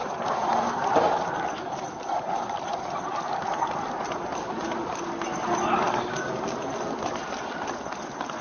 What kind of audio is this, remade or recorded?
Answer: recorded